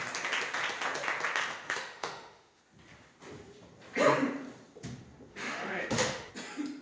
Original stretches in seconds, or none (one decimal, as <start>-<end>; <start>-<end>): 0.0-1.4; 2.6-5.3; 6.3-6.8